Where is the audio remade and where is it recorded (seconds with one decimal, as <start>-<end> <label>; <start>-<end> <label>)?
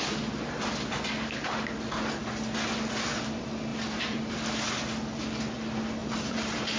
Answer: 0.0-3.7 recorded; 3.7-4.3 remade; 4.3-6.0 recorded; 6.0-6.8 remade